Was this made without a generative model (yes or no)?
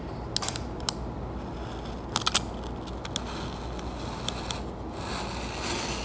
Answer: yes